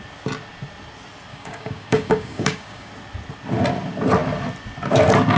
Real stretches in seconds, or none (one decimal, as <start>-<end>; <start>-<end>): 0.0-1.3; 2.9-5.4